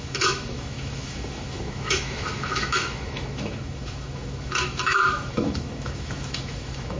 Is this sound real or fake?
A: fake